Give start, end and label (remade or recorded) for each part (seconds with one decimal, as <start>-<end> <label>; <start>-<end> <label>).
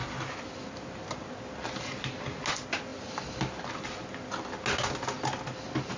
0.0-6.0 recorded